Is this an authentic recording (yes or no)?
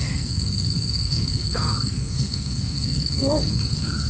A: no